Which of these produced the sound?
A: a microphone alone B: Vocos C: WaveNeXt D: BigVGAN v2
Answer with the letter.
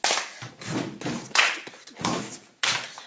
A